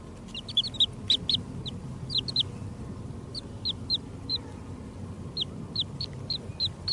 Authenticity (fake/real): real